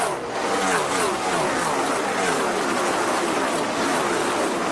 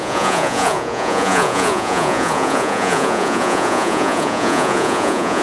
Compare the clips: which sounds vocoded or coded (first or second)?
second